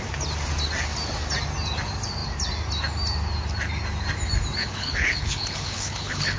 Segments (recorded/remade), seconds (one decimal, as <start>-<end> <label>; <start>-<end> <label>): 0.0-4.6 recorded; 4.6-6.4 remade